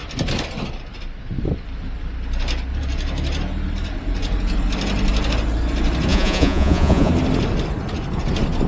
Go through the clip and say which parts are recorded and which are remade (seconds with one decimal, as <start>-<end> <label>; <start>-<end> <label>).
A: 0.0-6.1 recorded; 6.1-7.1 remade; 7.1-8.7 recorded